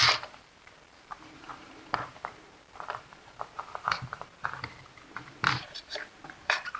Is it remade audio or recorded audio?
remade